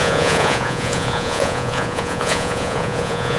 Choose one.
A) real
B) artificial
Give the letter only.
B